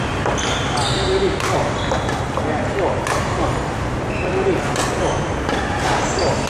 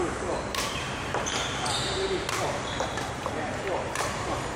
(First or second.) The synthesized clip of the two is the second